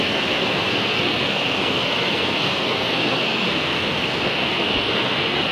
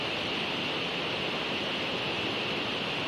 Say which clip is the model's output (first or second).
first